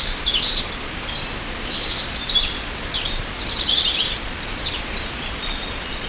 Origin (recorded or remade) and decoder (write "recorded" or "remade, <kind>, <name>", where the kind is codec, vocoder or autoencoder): recorded